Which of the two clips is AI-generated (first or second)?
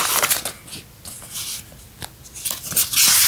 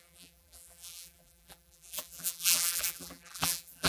second